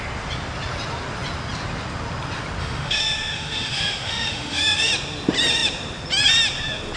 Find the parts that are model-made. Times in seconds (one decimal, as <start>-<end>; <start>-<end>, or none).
2.6-4.9